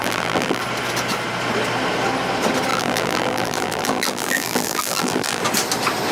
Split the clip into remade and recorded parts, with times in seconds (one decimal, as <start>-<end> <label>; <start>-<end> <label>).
0.0-0.6 remade; 0.6-2.7 recorded; 2.7-5.4 remade; 5.4-6.1 recorded